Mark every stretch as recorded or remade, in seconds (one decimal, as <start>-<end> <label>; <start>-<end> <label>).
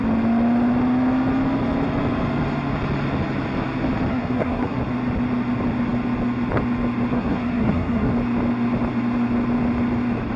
0.0-4.1 recorded; 4.1-4.8 remade; 4.8-7.1 recorded; 7.1-8.1 remade; 8.1-10.4 recorded